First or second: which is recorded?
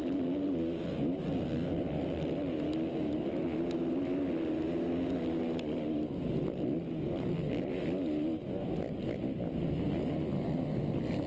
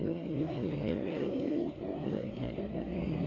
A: first